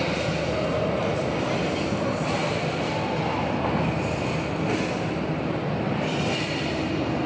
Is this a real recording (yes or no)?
yes